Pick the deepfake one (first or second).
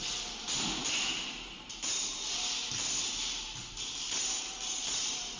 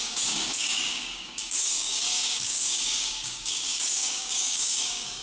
second